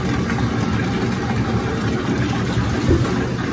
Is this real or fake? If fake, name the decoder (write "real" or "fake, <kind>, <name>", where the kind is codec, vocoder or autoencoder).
real